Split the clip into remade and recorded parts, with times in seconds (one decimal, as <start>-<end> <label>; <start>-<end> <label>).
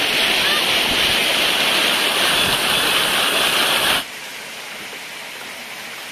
0.0-6.1 recorded